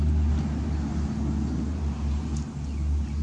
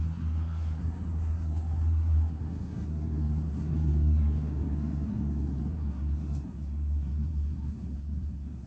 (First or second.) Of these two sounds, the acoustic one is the first